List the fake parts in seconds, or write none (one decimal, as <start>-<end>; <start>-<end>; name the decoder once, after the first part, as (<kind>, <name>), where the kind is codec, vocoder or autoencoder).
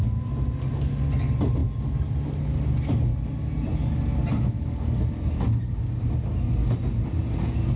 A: none